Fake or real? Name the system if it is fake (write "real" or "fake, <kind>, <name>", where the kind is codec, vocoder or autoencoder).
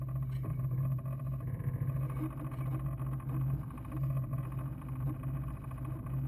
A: real